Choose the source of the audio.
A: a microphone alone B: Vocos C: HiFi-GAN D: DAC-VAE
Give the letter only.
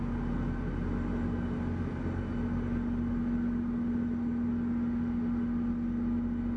A